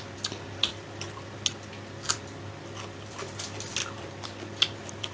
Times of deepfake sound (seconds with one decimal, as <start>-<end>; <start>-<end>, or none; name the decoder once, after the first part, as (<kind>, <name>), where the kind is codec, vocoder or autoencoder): none